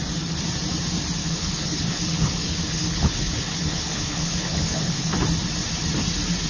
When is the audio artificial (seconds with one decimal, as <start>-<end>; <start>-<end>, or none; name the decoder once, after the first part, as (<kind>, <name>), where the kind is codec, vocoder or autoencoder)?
1.2-5.1 (codec, HILCodec)